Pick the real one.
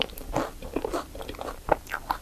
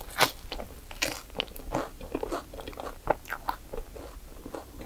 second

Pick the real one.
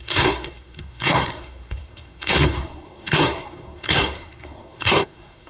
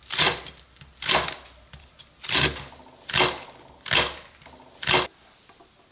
second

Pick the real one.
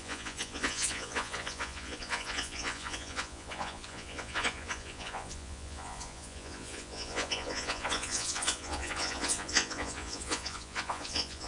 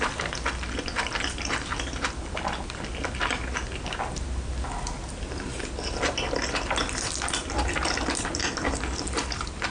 second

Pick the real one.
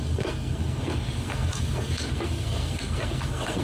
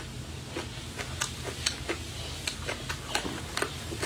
second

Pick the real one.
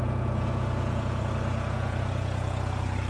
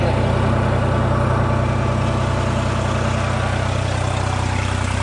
second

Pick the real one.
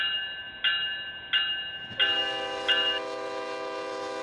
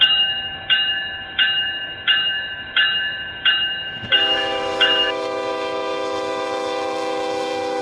first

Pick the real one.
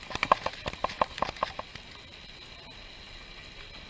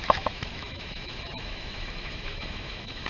first